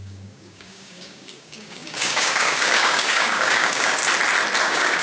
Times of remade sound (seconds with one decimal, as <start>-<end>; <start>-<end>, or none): 0.0-4.0; 4.6-5.0